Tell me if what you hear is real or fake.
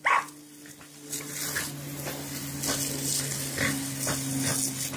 real